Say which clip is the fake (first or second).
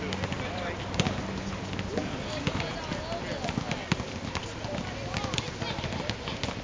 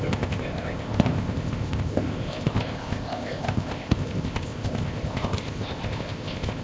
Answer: second